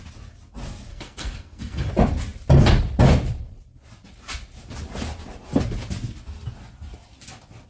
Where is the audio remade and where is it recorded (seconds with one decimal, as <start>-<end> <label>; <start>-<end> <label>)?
0.0-0.9 recorded; 0.9-1.9 remade; 1.9-7.7 recorded